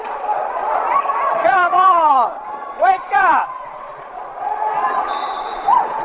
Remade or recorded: remade